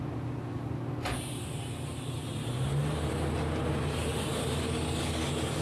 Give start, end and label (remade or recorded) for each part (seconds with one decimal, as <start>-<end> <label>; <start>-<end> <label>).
0.0-5.6 recorded